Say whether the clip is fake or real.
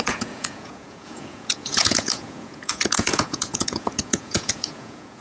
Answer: fake